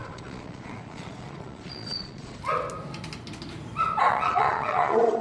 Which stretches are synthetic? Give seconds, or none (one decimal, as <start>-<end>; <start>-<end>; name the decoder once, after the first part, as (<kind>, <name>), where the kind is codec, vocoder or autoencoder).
0.0-2.4 (vocoder, Vocos); 4.1-5.2